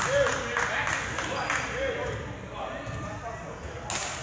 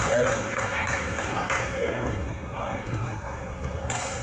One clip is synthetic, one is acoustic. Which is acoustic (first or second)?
first